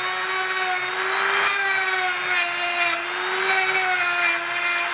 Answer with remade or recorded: recorded